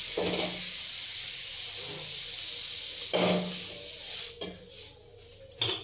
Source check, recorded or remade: recorded